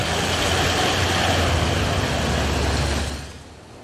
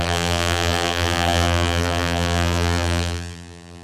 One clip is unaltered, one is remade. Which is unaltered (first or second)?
first